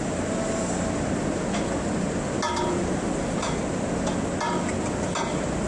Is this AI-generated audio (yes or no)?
no